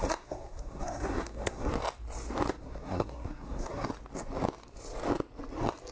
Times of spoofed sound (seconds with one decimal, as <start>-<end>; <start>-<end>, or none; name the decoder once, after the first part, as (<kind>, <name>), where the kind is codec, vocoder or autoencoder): 0.0-1.7 (codec, SNAC); 2.5-3.9